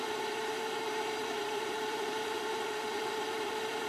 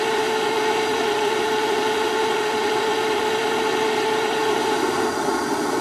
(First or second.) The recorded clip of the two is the second